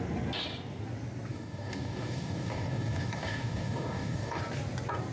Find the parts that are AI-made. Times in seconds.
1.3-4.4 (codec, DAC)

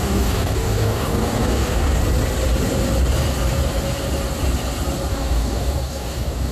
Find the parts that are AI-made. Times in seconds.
0.0-2.0 (codec, DAC); 5.1-6.5

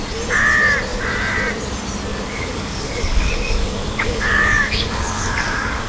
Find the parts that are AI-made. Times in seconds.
2.1-5.9 (codec, DAC)

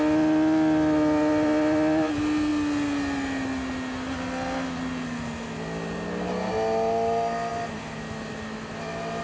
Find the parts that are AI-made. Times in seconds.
none

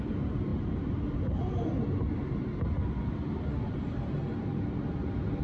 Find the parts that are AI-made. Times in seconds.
none

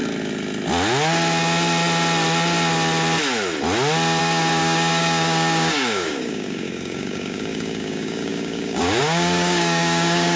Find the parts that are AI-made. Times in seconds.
4.2-10.4 (codec, DAC)

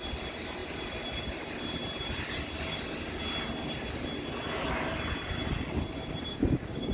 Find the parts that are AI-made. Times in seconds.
6.3-6.9 (codec, DAC)